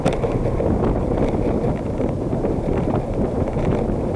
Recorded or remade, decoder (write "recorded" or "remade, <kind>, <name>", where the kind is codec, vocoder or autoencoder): recorded